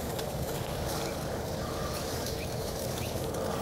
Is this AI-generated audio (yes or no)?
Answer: yes